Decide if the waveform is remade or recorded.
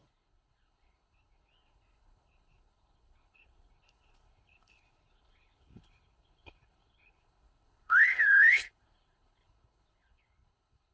remade